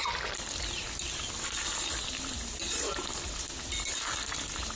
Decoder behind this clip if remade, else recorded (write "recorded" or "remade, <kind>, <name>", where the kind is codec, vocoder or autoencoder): recorded